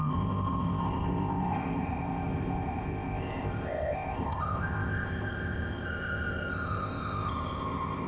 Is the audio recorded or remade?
remade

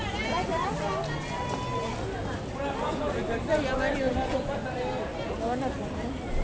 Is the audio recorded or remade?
recorded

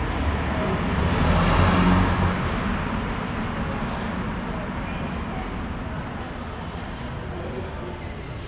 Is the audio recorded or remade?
recorded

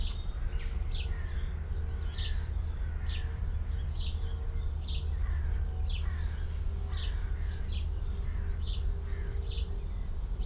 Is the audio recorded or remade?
recorded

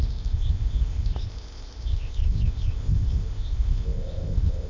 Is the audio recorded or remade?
remade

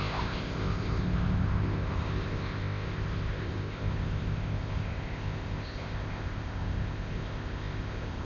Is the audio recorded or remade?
remade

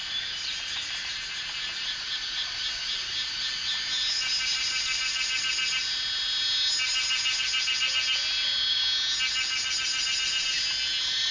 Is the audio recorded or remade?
recorded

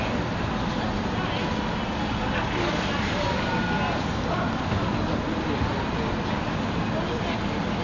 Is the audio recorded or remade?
recorded